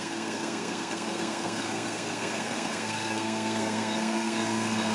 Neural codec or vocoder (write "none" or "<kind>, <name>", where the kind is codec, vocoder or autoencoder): codec, SNAC